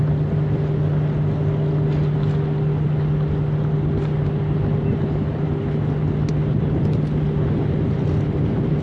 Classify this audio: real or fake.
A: real